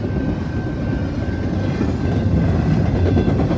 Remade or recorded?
recorded